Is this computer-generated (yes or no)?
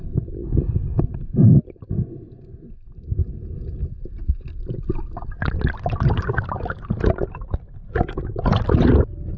no